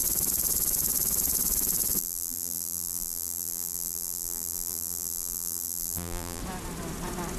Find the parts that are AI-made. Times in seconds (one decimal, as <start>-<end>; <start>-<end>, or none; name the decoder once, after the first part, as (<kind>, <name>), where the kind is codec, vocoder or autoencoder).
2.0-6.4 (vocoder, BigVGAN v2)